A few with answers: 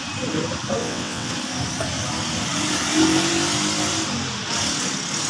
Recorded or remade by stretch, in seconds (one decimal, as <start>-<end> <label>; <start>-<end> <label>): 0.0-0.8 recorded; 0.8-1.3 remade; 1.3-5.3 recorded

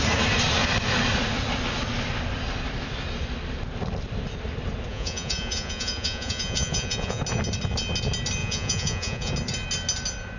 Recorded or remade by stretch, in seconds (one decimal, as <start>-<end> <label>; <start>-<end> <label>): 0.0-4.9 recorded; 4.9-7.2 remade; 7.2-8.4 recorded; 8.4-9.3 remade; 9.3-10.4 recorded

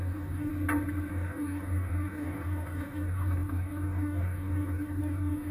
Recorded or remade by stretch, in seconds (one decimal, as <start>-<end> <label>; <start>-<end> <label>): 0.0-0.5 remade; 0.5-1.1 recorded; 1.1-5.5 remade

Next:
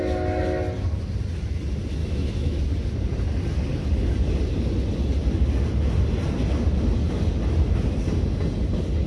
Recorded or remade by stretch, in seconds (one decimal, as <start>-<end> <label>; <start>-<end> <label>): 0.0-2.0 recorded; 2.0-2.6 remade; 2.6-9.1 recorded

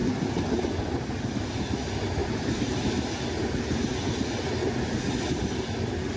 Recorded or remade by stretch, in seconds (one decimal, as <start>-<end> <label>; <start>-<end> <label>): 0.0-2.2 recorded; 2.2-3.7 remade; 3.7-6.2 recorded

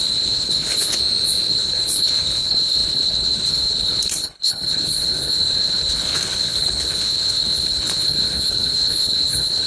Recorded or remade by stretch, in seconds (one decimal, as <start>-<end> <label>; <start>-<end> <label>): 0.0-1.0 remade; 1.0-1.5 recorded; 1.5-9.7 remade

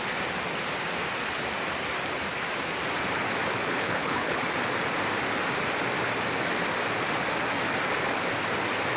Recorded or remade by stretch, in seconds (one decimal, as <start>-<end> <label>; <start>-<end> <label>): 0.0-3.5 recorded; 3.5-4.4 remade; 4.4-9.0 recorded